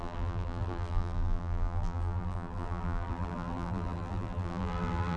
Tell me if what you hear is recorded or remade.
remade